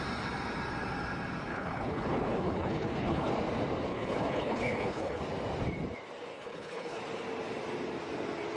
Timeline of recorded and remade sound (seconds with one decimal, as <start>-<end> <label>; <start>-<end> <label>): 0.0-1.5 recorded; 1.5-3.3 remade; 3.3-3.9 recorded; 3.9-5.2 remade; 5.2-6.3 recorded; 6.3-7.0 remade; 7.0-8.6 recorded